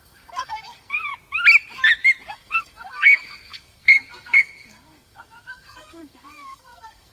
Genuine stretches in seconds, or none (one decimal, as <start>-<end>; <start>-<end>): 1.1-2.3